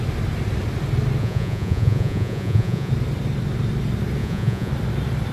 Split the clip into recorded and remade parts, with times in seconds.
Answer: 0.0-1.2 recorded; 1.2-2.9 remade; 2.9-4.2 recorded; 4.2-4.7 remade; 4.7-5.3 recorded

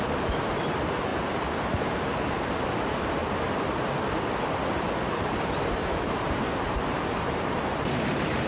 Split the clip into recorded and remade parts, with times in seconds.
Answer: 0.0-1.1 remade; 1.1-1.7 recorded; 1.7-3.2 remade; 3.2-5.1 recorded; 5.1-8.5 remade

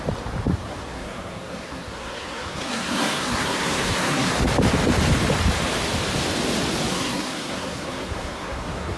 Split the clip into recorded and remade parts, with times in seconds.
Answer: 0.0-0.5 recorded; 0.5-4.3 remade; 4.3-6.9 recorded; 6.9-9.0 remade

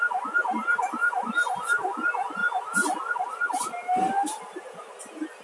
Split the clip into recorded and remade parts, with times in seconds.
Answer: 0.0-5.4 recorded

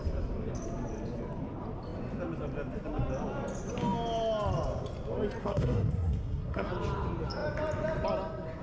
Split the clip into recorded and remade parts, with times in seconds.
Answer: 0.0-5.4 recorded; 5.4-6.7 remade; 6.7-8.6 recorded